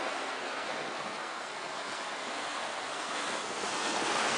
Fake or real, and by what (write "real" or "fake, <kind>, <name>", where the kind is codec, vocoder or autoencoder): fake, codec, SNAC